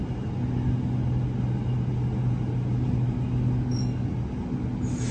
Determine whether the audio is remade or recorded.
recorded